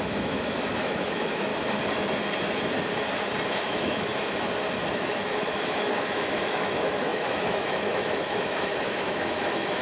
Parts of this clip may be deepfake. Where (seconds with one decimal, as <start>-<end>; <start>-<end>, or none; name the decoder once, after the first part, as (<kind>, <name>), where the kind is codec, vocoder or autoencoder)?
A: 0.0-1.5 (autoencoder, DAC-VAE); 3.5-4.1; 4.9-9.8